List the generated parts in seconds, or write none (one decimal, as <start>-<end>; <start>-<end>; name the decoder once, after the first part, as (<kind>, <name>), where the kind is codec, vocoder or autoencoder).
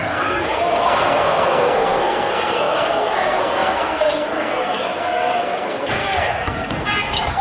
0.0-7.4 (codec, SNAC)